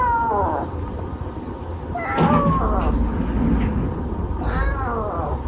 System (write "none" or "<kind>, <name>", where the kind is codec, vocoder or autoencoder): none